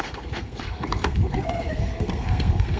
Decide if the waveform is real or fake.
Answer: fake